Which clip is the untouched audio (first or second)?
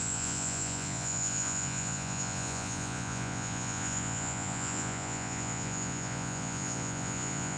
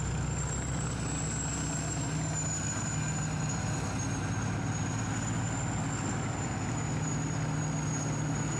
second